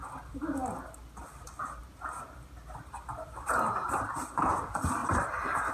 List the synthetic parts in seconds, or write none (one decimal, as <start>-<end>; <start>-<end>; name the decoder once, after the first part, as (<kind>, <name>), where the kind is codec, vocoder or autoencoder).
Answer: 1.8-3.9 (vocoder, BigVGAN v2); 5.0-5.7